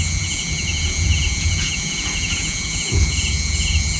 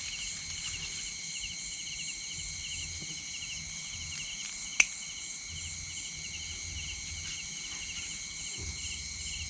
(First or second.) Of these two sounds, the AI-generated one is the first